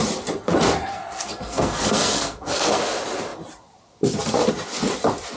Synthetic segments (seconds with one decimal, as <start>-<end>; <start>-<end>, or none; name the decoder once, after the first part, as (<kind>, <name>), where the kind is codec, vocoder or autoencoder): 0.9-2.8 (codec, SNAC)